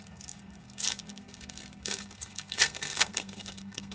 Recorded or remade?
remade